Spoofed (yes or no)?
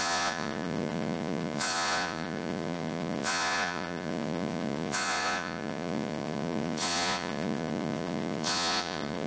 yes